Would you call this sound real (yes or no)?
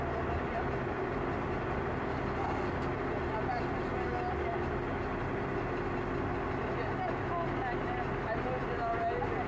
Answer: yes